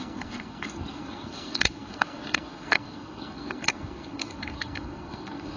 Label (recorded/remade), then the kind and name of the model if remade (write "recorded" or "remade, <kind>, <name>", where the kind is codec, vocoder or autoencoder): remade, codec, SNAC